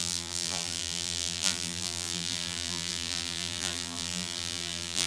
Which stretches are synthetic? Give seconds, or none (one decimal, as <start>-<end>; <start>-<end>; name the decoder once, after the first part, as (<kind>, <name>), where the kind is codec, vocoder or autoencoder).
0.0-5.1 (vocoder, BigVGAN v2)